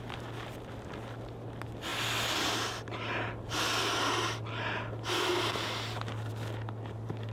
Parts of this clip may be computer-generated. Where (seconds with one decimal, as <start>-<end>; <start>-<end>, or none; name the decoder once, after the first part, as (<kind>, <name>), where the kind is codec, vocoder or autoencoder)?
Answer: none